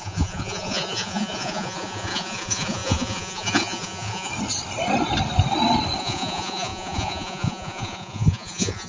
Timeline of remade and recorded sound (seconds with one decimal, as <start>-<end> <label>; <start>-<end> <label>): 0.0-4.3 remade; 4.3-6.0 recorded; 6.0-8.9 remade